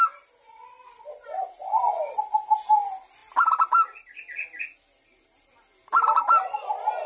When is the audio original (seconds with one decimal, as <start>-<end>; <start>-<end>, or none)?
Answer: 0.0-7.1